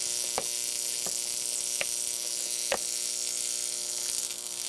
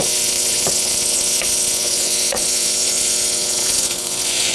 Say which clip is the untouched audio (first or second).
first